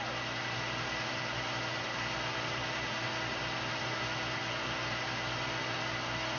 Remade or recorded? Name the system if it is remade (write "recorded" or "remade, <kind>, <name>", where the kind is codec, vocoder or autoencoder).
recorded